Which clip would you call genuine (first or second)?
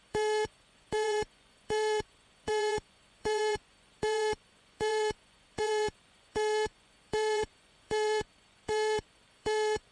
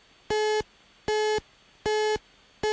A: second